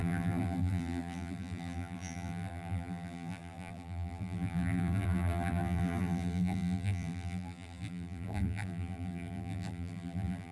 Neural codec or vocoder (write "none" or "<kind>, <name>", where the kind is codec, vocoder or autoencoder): vocoder, BigVGAN v2